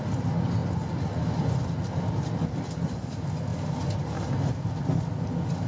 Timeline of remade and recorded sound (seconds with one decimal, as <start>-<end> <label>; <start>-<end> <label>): 0.0-5.7 recorded